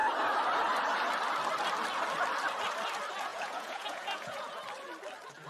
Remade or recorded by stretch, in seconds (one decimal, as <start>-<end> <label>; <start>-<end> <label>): 0.0-3.3 recorded; 3.3-4.5 remade; 4.5-5.5 recorded